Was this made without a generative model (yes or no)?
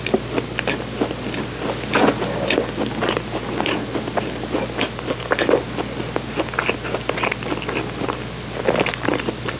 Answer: yes